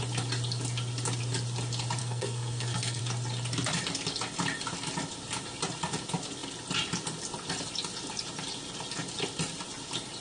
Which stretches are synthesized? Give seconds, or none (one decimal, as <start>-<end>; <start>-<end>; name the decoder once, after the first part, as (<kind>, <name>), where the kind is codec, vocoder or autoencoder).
2.0-3.0 (codec, SNAC)